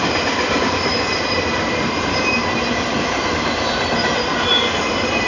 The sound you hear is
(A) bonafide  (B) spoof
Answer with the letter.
B